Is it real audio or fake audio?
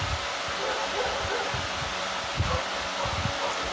real